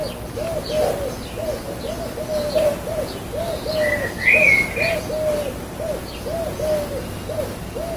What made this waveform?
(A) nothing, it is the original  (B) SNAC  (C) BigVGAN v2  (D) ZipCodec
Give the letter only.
A